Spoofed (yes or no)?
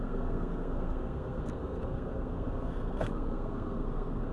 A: yes